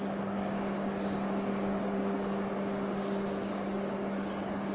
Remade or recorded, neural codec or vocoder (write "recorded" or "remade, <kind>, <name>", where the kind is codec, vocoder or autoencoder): remade, codec, DAC